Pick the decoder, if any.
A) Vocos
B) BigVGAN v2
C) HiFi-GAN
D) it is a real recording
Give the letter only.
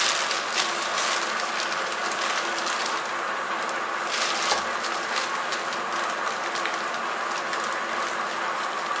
D